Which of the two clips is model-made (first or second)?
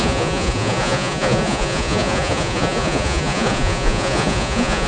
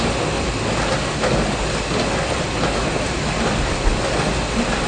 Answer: first